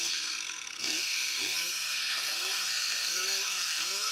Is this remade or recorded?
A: remade